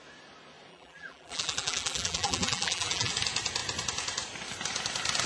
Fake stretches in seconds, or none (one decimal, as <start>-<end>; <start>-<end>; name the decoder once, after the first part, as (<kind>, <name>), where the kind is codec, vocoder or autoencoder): 0.7-3.1 (vocoder, BigVGAN v2)